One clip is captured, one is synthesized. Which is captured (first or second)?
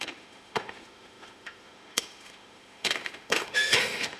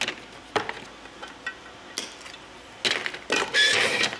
second